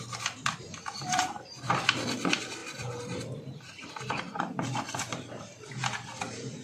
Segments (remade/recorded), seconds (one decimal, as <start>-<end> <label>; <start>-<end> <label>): 0.0-6.6 remade